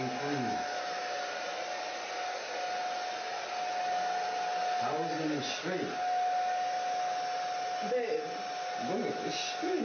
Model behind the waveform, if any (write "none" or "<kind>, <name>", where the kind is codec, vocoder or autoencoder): none